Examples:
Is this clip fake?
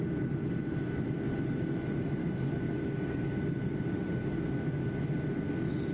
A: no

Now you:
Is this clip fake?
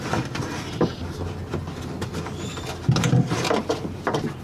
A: no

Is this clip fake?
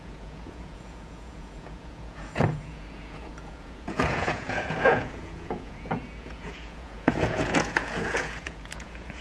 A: yes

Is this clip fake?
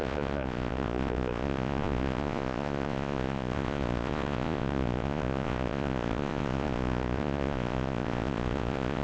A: yes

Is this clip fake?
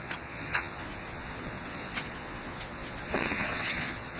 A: yes